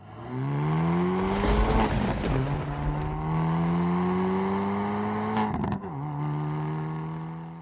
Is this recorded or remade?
recorded